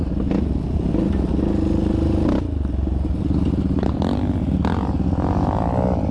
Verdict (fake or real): real